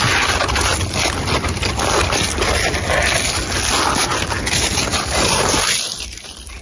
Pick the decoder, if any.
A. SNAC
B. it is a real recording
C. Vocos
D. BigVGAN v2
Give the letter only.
B